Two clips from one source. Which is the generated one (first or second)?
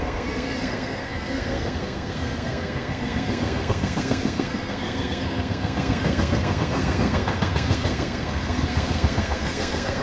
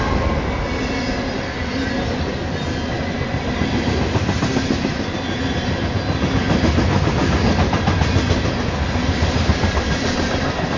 first